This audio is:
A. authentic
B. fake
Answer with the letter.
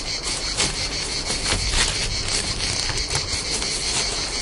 A